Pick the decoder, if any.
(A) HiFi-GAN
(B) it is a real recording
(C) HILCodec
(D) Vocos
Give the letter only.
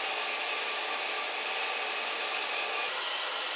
B